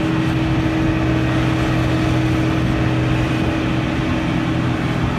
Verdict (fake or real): real